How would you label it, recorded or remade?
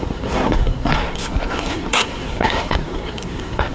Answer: remade